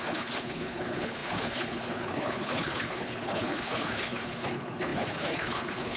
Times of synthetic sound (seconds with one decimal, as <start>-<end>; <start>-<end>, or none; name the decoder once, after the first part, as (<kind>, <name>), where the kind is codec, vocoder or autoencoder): 0.0-6.0 (codec, HILCodec)